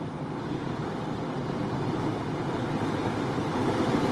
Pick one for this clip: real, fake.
real